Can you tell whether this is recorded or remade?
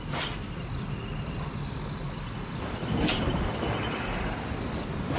recorded